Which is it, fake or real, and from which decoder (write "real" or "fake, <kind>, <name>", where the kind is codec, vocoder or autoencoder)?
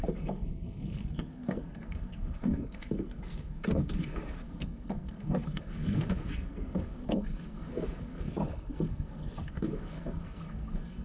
fake, codec, SNAC